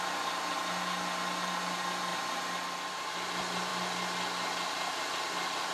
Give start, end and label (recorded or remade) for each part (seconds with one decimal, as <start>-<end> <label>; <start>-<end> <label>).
0.0-5.7 recorded